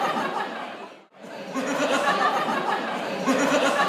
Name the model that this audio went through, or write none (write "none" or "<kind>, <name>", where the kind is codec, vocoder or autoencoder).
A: none